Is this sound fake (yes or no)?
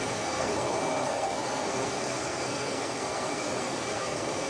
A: yes